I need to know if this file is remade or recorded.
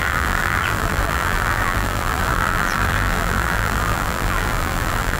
remade